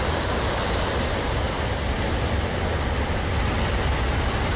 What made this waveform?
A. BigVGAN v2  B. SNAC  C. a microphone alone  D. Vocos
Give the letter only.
C